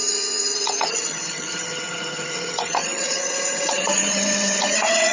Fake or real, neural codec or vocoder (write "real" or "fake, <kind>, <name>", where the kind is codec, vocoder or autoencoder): fake, vocoder, HiFi-GAN